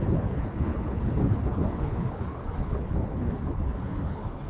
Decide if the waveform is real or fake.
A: fake